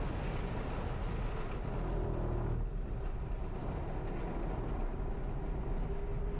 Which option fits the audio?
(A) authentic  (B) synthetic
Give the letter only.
A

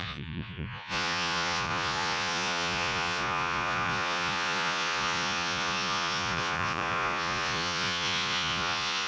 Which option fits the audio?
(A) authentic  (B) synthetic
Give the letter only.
B